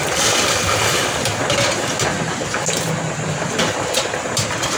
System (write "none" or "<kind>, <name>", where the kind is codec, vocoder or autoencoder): none